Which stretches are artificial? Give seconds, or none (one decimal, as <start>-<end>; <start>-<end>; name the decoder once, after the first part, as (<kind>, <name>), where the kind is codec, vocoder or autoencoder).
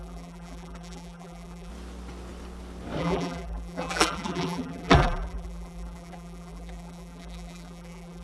0.0-1.7 (vocoder, BigVGAN v2); 3.0-8.2